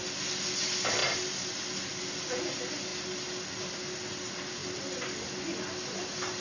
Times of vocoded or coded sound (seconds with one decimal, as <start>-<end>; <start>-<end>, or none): none

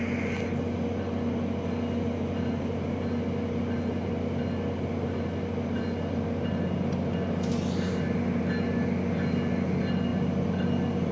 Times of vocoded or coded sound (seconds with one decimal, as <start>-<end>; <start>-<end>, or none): none

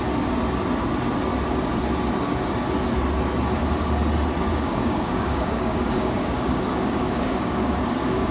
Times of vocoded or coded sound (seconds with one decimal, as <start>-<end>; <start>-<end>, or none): 4.5-8.3

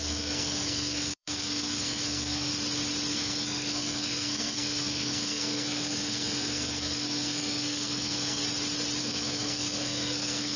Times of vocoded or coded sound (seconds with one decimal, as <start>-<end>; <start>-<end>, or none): 0.0-2.5; 3.1-8.4; 9.0-10.6

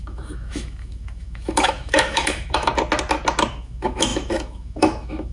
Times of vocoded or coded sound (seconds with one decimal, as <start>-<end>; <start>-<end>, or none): 0.0-2.7; 3.5-5.3